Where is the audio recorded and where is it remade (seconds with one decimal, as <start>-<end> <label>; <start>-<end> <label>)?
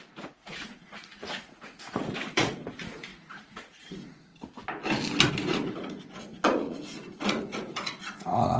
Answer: 0.0-4.3 remade; 4.3-5.3 recorded; 5.3-8.6 remade